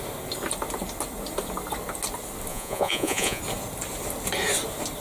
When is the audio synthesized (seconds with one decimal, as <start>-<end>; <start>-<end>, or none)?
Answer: 2.5-3.4